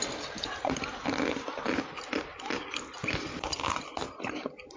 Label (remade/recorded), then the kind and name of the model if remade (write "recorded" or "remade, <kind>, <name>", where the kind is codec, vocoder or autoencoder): recorded